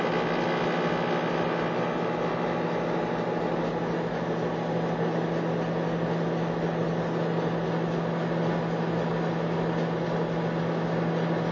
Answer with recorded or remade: recorded